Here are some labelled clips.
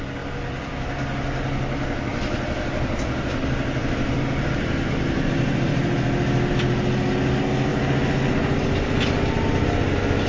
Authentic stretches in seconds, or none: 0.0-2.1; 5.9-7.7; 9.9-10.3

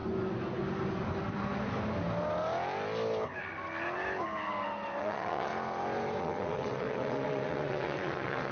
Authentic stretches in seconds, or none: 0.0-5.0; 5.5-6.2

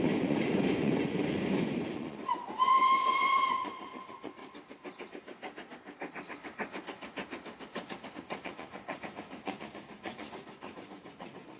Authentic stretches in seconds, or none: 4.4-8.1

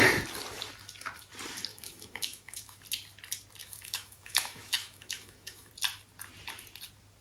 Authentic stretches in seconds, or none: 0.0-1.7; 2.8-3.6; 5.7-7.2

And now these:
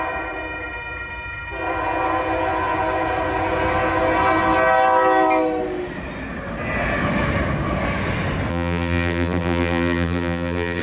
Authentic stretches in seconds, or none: 0.0-8.5

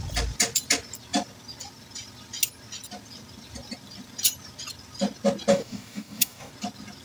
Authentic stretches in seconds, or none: 0.0-5.5; 6.5-7.0

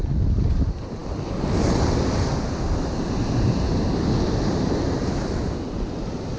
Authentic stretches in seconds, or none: 0.0-6.4